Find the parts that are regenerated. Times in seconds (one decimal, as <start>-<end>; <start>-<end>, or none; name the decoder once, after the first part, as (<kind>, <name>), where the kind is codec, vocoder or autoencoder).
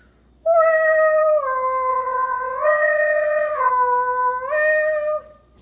1.9-3.7 (vocoder, WaveNeXt)